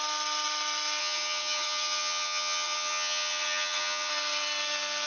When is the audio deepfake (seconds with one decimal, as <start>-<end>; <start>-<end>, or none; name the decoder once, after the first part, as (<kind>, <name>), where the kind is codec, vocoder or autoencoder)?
1.0-4.1 (vocoder, HiFi-GAN)